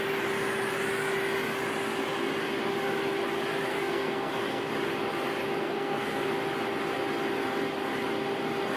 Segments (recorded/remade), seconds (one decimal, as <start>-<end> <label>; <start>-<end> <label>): 0.0-3.7 recorded; 3.7-4.7 remade; 4.7-5.6 recorded; 5.6-6.3 remade; 6.3-8.8 recorded